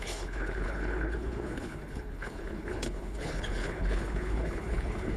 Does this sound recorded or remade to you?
remade